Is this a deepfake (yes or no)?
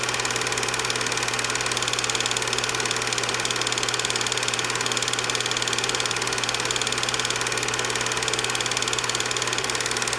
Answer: no